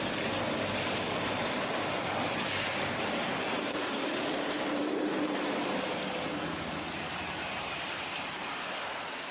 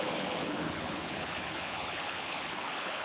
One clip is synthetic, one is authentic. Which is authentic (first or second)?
first